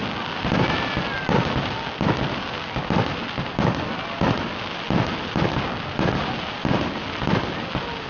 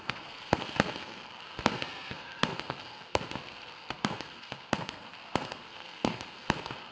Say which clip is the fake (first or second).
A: second